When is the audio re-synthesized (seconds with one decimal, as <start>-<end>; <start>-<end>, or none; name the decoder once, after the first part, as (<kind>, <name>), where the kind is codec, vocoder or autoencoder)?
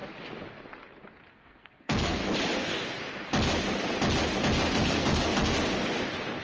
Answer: 1.3-2.2 (codec, SNAC); 4.7-5.5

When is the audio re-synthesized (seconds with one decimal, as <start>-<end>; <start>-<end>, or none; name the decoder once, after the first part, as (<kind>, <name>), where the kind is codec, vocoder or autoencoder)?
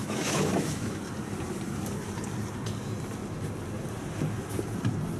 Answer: 0.0-1.0 (autoencoder, DAC-VAE)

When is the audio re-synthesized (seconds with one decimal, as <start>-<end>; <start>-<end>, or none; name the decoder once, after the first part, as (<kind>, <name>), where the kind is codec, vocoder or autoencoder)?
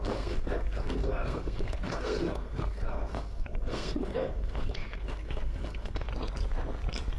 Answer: 0.0-6.1 (codec, SNAC)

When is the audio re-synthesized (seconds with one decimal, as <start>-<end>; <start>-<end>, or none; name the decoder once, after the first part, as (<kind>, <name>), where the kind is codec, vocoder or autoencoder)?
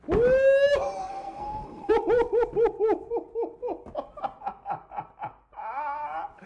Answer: 1.0-1.9 (codec, SNAC)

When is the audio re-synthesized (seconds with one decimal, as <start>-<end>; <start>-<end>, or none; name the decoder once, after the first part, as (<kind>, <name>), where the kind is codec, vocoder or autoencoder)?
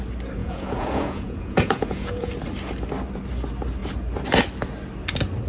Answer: 0.4-2.3 (vocoder, Vocos)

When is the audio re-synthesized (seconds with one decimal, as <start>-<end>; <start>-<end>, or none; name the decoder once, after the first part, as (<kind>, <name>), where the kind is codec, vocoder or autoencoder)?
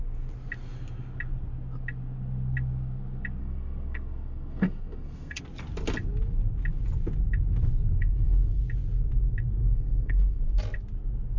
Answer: 3.4-5.4 (codec, SNAC); 8.0-8.6; 9.6-10.4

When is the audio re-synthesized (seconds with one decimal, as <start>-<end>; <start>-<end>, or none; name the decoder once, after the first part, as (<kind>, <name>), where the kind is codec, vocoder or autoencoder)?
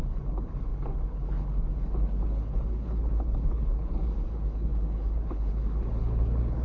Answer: 0.0-6.6 (codec, HILCodec)